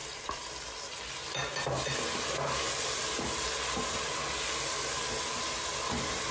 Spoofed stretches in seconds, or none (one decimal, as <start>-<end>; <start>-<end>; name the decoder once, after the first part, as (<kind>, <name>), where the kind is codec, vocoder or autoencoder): none